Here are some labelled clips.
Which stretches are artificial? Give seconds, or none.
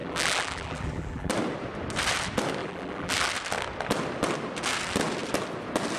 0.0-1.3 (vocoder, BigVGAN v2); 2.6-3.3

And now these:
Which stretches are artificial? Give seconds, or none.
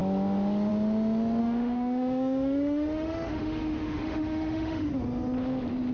1.4-4.9 (autoencoder, DAC-VAE)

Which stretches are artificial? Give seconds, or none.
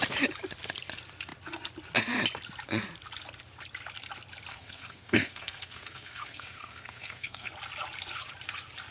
4.5-7.5 (codec, SNAC)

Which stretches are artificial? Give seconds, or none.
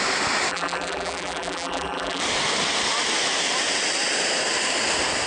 0.5-2.2 (vocoder, BigVGAN v2)